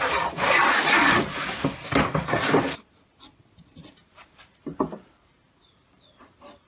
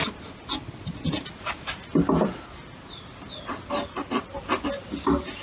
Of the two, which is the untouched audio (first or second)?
second